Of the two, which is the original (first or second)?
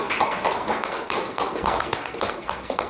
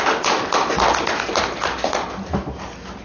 second